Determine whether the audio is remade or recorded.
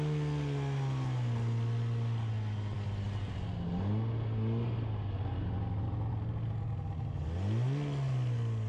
recorded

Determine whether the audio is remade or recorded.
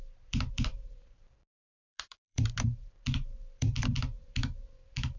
remade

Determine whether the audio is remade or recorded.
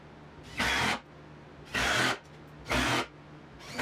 recorded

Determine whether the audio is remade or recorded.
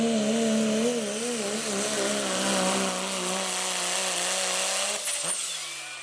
recorded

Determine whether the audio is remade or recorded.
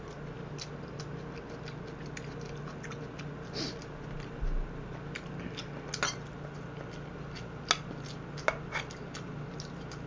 recorded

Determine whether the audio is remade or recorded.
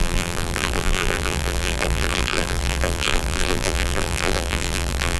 remade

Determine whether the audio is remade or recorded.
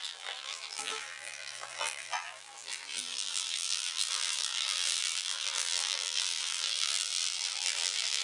remade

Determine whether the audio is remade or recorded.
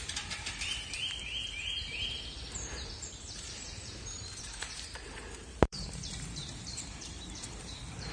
remade